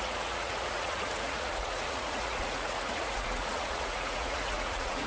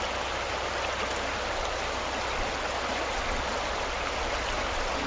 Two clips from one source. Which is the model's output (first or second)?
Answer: first